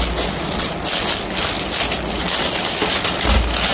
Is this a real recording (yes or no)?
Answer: yes